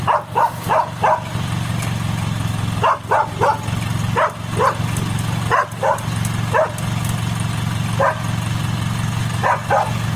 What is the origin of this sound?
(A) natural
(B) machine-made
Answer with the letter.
A